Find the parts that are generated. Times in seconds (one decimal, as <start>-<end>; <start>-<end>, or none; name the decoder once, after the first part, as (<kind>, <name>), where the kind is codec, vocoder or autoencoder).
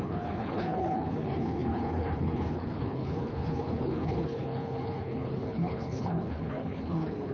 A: 0.0-7.3 (codec, HILCodec)